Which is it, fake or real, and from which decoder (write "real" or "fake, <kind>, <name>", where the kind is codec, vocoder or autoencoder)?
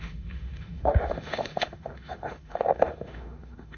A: fake, autoencoder, DAC-VAE